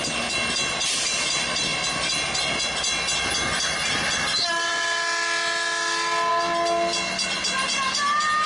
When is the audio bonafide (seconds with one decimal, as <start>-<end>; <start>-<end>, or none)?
0.0-8.5